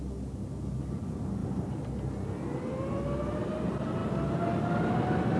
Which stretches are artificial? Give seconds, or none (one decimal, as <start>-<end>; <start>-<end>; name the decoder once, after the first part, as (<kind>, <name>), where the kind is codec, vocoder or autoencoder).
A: none